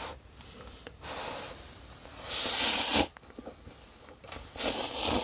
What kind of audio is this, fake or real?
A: real